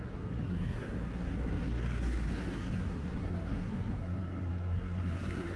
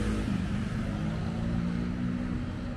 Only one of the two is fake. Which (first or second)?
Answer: first